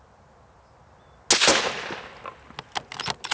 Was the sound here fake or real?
real